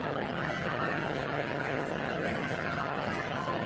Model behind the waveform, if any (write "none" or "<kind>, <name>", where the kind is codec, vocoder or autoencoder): vocoder, HiFi-GAN